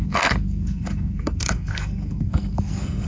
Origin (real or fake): fake